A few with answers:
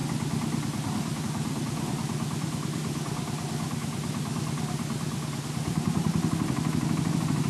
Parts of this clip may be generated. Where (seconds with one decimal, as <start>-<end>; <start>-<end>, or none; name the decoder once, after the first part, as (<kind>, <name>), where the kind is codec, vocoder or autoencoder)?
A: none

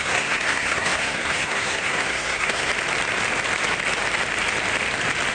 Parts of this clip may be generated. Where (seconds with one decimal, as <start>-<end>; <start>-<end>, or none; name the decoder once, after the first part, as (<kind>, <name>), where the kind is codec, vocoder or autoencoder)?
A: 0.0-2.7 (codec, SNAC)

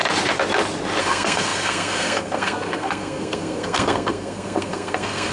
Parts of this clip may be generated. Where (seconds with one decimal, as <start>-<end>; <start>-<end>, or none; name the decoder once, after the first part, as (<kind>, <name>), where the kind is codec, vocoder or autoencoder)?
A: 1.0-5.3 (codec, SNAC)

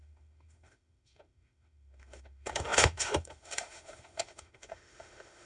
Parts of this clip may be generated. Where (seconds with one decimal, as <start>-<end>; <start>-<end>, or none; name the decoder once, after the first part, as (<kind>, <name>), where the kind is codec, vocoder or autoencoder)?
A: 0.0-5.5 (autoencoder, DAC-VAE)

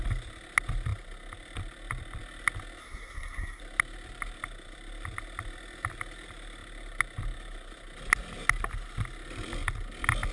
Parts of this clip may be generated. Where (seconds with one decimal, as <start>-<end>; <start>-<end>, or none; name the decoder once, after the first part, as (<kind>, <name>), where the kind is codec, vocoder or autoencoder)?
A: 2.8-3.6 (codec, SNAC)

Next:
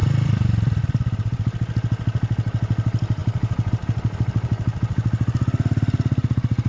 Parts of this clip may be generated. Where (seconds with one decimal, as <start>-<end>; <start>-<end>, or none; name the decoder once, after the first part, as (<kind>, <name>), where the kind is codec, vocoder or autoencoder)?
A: 0.0-0.8 (vocoder, BigVGAN v2)